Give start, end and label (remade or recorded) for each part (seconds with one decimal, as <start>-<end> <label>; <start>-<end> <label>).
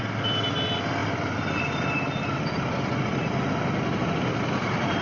0.0-5.0 recorded